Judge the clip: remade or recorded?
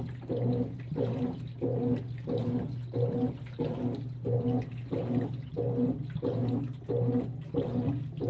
recorded